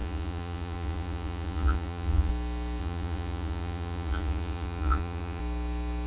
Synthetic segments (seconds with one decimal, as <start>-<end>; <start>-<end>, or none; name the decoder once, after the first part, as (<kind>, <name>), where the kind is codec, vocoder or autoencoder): 0.0-2.3 (vocoder, Vocos); 2.8-5.4